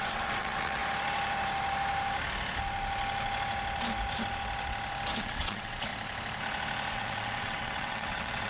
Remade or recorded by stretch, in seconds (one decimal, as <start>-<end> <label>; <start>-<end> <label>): 0.0-0.8 remade; 0.8-5.2 recorded; 5.2-5.9 remade; 5.9-6.9 recorded; 6.9-8.5 remade